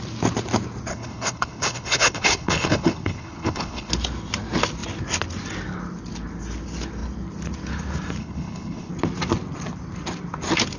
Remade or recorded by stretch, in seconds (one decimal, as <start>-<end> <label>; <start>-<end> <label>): 0.0-0.9 recorded; 0.9-3.9 remade; 3.9-8.2 recorded; 8.2-8.9 remade; 8.9-10.8 recorded